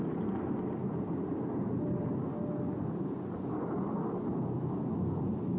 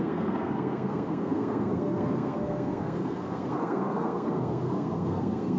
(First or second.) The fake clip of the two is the second